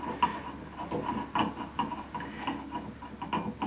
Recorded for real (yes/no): yes